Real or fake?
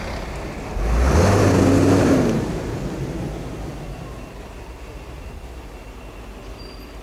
real